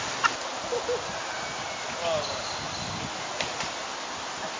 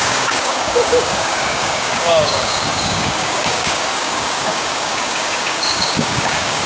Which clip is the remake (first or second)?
second